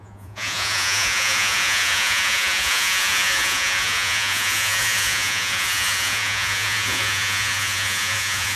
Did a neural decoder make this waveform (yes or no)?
yes